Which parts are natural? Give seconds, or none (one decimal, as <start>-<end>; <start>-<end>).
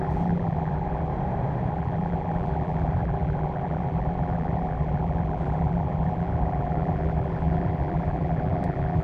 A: 1.1-1.7